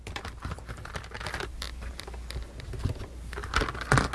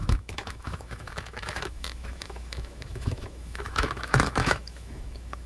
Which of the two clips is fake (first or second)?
second